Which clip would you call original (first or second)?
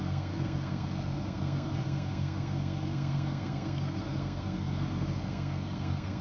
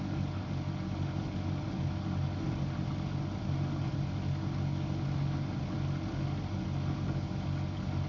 second